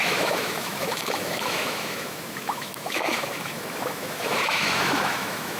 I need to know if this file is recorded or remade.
remade